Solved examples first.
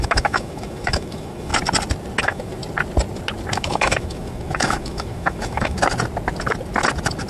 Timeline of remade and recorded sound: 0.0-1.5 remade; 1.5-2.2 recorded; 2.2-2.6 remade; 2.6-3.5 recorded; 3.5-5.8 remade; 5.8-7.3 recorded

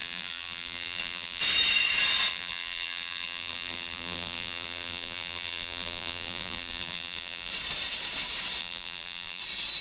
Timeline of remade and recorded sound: 0.0-1.4 remade; 1.4-2.3 recorded; 2.3-7.5 remade; 7.5-8.6 recorded; 8.6-9.4 remade; 9.4-9.8 recorded

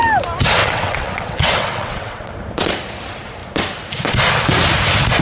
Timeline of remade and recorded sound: 0.0-0.6 recorded; 0.6-2.3 remade; 2.3-5.2 recorded

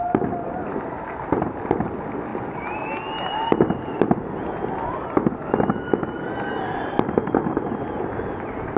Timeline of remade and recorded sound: 0.0-8.8 recorded

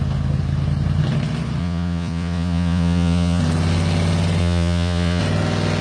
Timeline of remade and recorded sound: 0.0-1.6 recorded; 1.6-3.4 remade; 3.4-4.4 recorded; 4.4-5.2 remade; 5.2-5.8 recorded